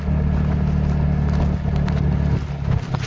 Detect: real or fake real